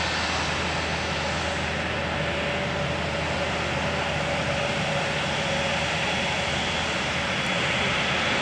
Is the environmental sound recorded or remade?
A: recorded